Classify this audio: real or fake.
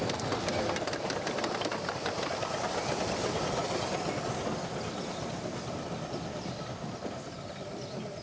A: real